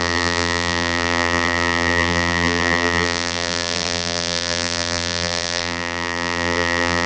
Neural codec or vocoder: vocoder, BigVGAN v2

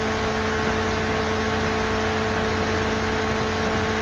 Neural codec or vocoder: none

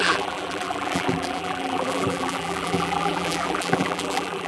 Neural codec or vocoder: vocoder, BigVGAN v2